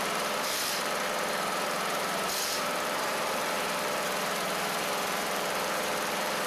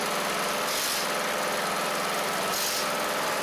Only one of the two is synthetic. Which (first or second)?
first